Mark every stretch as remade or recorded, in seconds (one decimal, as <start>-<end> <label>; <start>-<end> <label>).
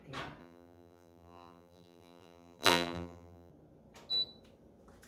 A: 0.0-0.4 recorded; 0.4-3.5 remade; 3.5-5.1 recorded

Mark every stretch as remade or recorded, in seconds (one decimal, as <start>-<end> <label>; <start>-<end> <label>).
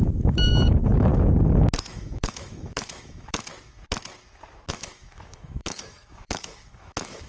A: 0.0-1.1 remade; 1.1-1.9 recorded; 1.9-3.5 remade; 3.5-4.7 recorded; 4.7-7.3 remade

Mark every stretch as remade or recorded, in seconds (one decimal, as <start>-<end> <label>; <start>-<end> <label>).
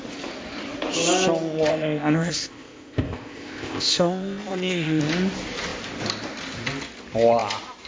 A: 0.0-1.7 recorded; 1.7-5.0 remade; 5.0-7.9 recorded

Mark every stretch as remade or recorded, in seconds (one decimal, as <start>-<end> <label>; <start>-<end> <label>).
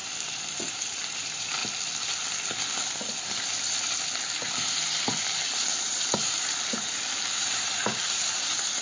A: 0.0-1.6 remade; 1.6-4.2 recorded; 4.2-8.8 remade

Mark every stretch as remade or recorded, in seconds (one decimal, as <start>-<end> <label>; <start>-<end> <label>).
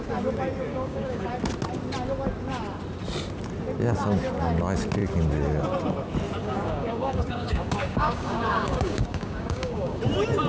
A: 0.0-0.7 recorded; 0.7-1.3 remade; 1.3-6.4 recorded; 6.4-10.0 remade; 10.0-10.5 recorded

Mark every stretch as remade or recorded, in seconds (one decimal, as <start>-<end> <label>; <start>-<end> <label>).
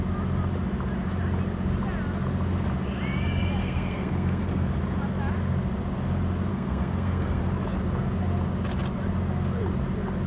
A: 0.0-3.6 recorded; 3.6-4.4 remade; 4.4-6.5 recorded; 6.5-7.4 remade; 7.4-10.3 recorded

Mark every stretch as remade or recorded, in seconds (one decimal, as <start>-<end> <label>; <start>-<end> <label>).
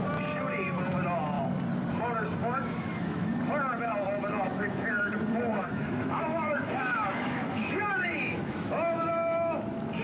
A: 0.0-2.4 recorded; 2.4-3.3 remade; 3.3-4.5 recorded; 4.5-5.1 remade; 5.1-5.5 recorded; 5.5-9.6 remade; 9.6-10.0 recorded